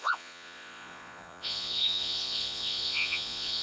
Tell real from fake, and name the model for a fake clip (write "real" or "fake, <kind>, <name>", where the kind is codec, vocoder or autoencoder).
fake, vocoder, Vocos